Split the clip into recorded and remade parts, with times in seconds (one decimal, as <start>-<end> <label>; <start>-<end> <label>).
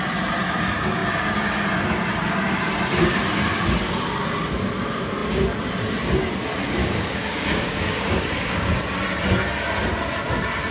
0.0-6.8 recorded; 6.8-8.7 remade; 8.7-10.7 recorded